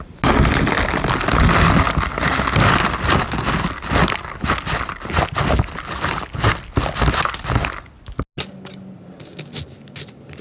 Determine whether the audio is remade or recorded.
recorded